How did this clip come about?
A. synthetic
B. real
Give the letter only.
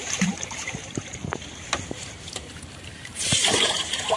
A